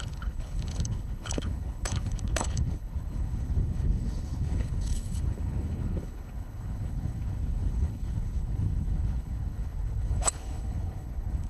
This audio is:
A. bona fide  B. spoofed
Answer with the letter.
B